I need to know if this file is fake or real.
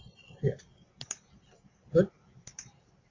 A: fake